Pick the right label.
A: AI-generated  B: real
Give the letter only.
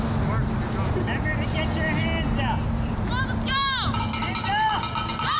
B